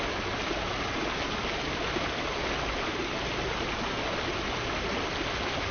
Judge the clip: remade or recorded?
recorded